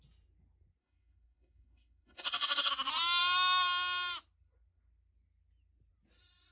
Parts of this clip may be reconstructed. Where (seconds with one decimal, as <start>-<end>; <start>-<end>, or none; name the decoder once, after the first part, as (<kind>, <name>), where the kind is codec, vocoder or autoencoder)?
0.8-2.7 (codec, DAC)